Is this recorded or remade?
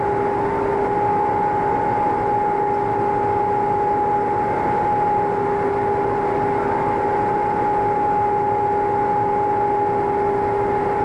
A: recorded